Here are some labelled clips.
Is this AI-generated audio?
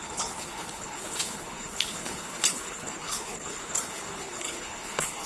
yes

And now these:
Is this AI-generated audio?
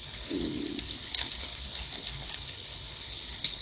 yes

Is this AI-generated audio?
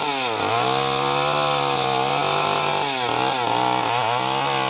no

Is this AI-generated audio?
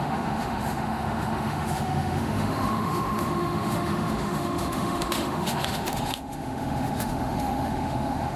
yes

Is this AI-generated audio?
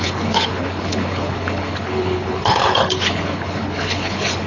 yes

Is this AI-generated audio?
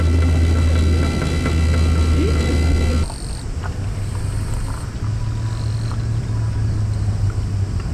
no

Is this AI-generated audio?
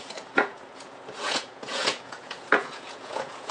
yes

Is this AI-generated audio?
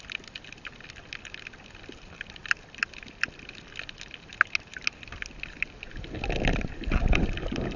no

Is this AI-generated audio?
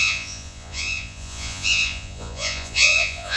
yes